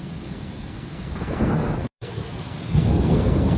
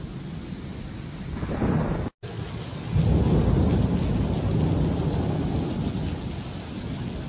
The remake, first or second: first